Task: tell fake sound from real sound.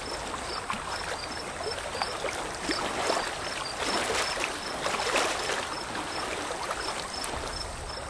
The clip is real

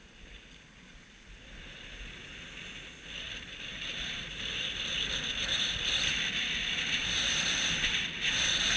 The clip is real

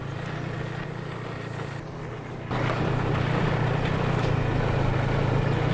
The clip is real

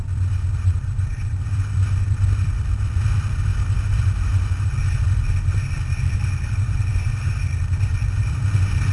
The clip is fake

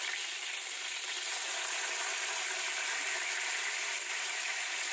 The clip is fake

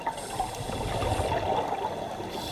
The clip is real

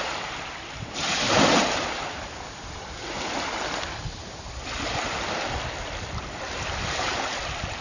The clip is real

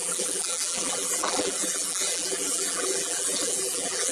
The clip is fake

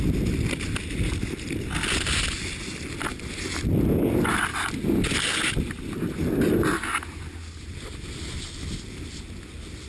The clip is real